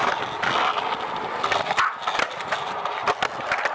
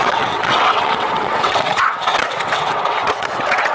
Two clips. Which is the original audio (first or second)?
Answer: first